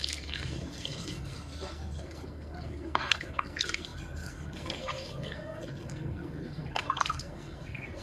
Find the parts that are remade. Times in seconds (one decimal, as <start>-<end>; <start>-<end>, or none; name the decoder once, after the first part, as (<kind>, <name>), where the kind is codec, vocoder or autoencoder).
0.0-8.0 (codec, SNAC)